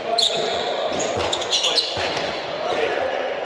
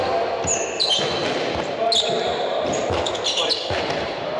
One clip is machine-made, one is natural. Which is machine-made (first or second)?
first